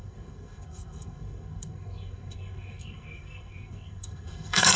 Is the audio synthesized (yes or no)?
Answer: yes